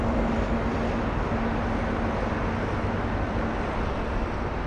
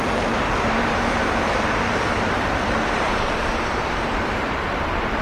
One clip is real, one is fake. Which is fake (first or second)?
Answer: second